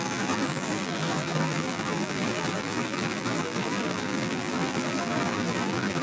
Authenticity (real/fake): fake